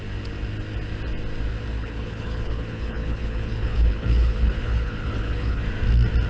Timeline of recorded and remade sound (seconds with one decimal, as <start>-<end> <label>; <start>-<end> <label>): 0.0-1.8 recorded; 1.8-5.6 remade; 5.6-6.3 recorded